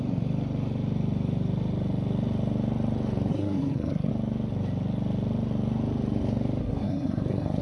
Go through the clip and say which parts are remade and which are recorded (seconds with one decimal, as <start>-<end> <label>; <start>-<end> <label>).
0.0-3.3 recorded; 3.3-4.1 remade; 4.1-6.6 recorded; 6.6-7.6 remade

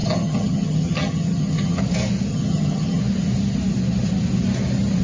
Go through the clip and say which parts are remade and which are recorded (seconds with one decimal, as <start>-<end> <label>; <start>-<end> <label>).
0.0-1.8 remade; 1.8-2.3 recorded; 2.3-3.0 remade; 3.0-5.0 recorded

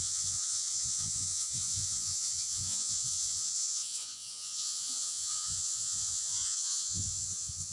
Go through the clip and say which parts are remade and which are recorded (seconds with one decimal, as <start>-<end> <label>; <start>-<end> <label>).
0.0-7.7 remade

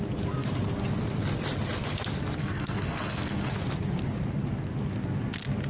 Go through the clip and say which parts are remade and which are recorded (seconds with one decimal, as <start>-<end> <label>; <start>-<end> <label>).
0.0-2.4 recorded; 2.4-3.5 remade; 3.5-5.7 recorded

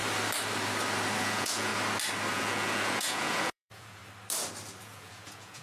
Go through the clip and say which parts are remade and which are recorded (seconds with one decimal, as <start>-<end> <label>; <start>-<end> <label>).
0.0-1.2 recorded; 1.2-1.7 remade; 1.7-2.3 recorded; 2.3-4.0 remade; 4.0-4.8 recorded; 4.8-5.6 remade